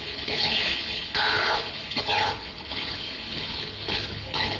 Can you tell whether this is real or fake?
fake